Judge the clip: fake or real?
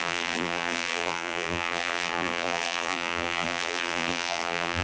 fake